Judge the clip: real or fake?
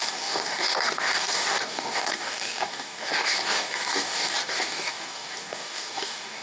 fake